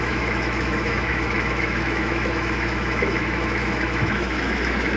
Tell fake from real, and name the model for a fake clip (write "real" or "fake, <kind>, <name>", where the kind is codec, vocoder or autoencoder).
fake, autoencoder, DAC-VAE